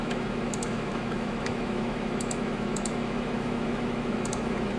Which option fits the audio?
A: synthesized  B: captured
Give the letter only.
A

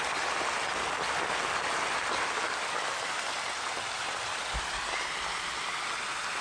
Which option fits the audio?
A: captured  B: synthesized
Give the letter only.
A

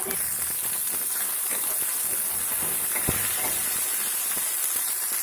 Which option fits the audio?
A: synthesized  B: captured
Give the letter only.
B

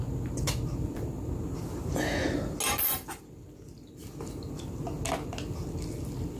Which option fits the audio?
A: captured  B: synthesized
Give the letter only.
A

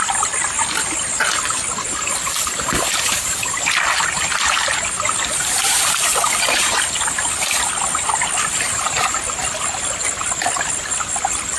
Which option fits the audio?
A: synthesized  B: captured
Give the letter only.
B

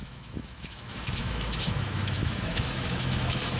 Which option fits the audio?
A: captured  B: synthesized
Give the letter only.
B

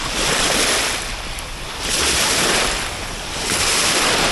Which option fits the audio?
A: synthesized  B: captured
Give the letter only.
B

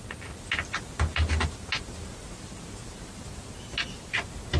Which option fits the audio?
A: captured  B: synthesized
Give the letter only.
A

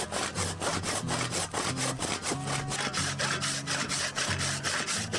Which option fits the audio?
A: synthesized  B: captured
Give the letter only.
B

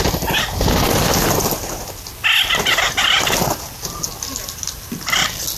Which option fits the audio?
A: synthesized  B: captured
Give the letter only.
B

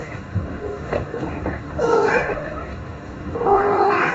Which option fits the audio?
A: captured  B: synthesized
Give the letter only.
B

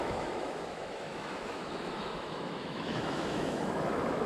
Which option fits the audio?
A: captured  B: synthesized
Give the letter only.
B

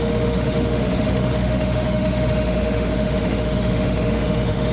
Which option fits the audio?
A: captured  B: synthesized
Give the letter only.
B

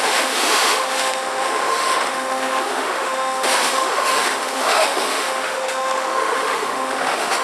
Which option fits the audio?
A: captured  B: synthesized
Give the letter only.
B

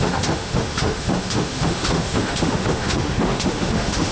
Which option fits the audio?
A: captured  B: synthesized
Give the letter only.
B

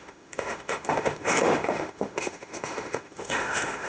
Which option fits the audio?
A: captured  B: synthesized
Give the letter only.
B